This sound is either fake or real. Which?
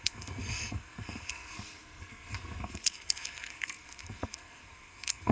fake